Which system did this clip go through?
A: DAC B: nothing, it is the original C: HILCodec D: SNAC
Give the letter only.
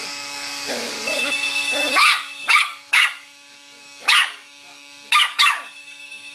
A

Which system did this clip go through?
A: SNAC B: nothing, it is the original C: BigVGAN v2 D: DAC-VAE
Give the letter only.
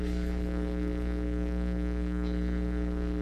A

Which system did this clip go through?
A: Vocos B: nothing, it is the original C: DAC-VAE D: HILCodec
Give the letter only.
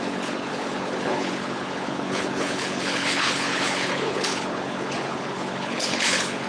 D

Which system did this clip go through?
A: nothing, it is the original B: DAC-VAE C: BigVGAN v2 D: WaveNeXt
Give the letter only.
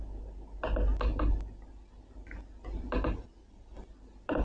A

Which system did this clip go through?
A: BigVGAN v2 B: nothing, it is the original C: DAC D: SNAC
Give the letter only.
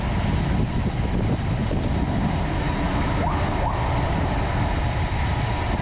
B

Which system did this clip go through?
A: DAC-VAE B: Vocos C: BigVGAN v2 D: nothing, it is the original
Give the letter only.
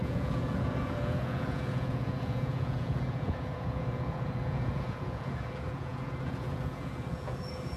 B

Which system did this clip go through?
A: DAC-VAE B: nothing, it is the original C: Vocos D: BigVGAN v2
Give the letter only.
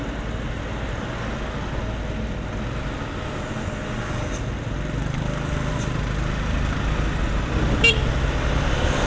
B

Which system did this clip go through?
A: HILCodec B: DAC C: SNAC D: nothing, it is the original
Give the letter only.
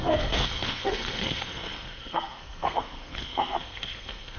C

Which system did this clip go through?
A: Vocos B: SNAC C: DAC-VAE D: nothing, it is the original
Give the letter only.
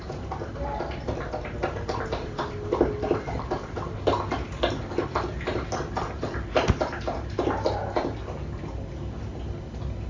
D